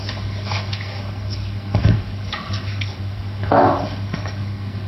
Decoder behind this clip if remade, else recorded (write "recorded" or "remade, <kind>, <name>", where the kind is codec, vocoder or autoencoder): remade, codec, SNAC